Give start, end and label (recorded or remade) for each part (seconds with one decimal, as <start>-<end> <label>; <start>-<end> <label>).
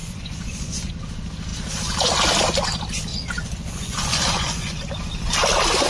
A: 0.0-0.9 remade; 0.9-3.1 recorded; 3.1-4.8 remade; 4.8-5.9 recorded